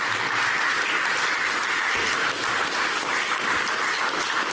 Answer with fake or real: real